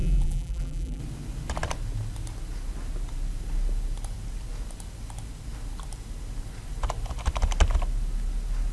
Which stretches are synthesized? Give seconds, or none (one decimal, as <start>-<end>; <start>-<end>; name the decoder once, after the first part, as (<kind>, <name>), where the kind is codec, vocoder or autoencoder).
0.0-1.0 (vocoder, BigVGAN v2)